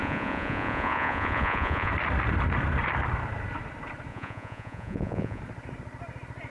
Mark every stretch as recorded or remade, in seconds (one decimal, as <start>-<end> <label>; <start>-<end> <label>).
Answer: 0.0-1.9 remade; 1.9-4.1 recorded; 4.1-5.4 remade; 5.4-6.5 recorded